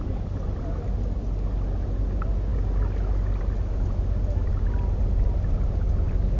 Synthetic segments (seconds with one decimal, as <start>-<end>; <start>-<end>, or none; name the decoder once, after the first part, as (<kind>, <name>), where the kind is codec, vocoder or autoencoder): none